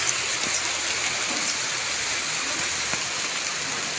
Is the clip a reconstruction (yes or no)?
no